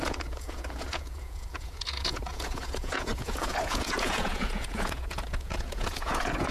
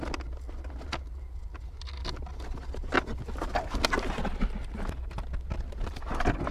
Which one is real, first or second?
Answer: second